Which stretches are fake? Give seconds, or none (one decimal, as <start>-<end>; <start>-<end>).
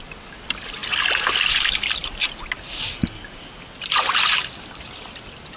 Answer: 0.0-2.0; 3.8-5.6